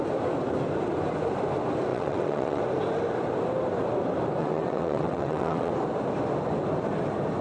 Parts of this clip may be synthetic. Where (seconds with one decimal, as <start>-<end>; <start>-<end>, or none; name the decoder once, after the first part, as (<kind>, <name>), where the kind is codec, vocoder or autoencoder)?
1.9-2.6 (vocoder, WaveNeXt); 4.4-5.7

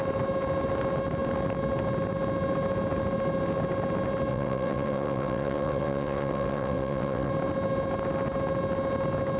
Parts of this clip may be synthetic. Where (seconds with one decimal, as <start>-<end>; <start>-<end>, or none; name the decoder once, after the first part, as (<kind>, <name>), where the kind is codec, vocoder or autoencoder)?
4.3-7.3 (vocoder, WaveNeXt)